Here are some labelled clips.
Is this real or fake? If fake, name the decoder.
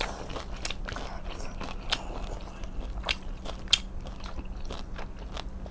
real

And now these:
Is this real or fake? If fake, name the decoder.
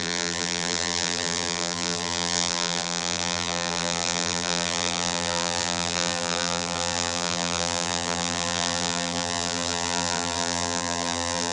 fake, vocoder, BigVGAN v2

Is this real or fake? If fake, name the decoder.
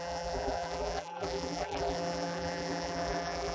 fake, vocoder, BigVGAN v2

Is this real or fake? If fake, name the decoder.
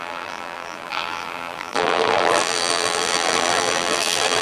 fake, vocoder, BigVGAN v2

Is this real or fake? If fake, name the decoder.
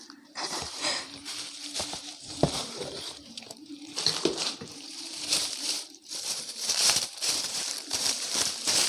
fake, vocoder, BigVGAN v2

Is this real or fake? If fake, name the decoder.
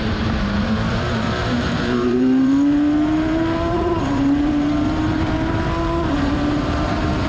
fake, vocoder, BigVGAN v2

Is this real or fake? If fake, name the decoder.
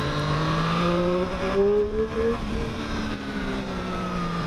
fake, vocoder, BigVGAN v2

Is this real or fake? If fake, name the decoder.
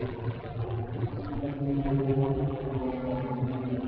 fake, vocoder, BigVGAN v2